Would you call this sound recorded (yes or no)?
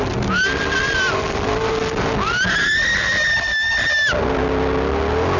yes